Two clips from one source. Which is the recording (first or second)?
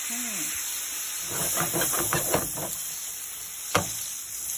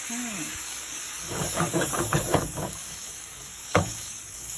first